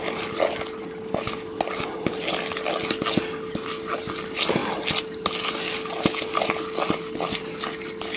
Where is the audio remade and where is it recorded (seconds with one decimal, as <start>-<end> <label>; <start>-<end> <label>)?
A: 0.0-8.2 recorded